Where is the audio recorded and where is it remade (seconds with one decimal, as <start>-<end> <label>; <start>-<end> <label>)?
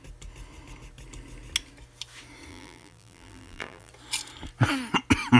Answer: 0.0-2.5 recorded; 2.5-3.9 remade; 3.9-5.4 recorded